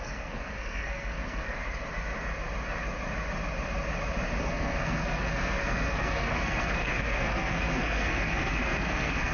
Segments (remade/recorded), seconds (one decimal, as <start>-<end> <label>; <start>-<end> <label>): 0.0-1.6 remade; 1.6-4.4 recorded; 4.4-9.3 remade